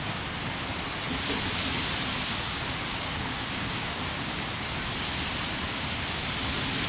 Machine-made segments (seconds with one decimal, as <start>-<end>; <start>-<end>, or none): 2.9-4.4